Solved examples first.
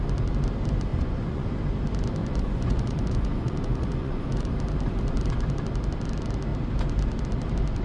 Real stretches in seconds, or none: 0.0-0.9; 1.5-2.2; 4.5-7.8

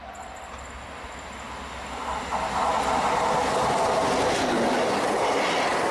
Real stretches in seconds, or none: 0.0-5.9

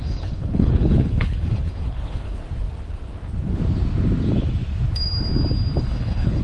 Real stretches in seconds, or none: 2.4-5.8

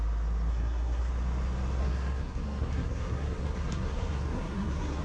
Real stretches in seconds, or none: 0.0-0.5; 1.1-1.8

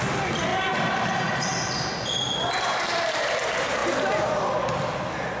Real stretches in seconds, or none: 0.0-0.5; 1.9-3.8; 4.3-5.4

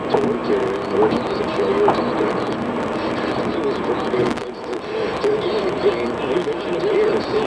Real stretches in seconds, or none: 0.0-7.5

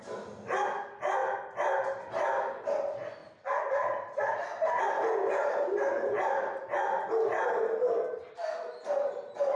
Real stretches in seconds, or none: 0.0-9.5

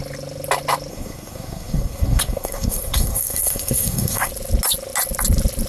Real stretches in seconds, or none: 0.0-0.9; 4.3-5.7